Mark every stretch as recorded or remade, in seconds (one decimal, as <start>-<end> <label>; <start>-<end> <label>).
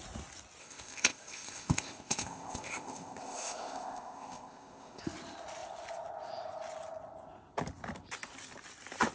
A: 0.0-0.6 recorded; 0.6-5.0 remade; 5.0-9.1 recorded